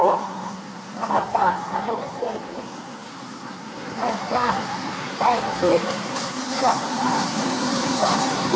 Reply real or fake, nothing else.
fake